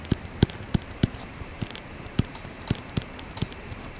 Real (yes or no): no